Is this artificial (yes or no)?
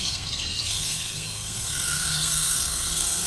yes